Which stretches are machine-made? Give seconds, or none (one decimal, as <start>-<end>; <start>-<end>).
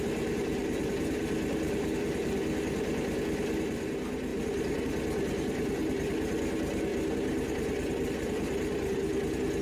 0.6-2.7; 4.3-4.8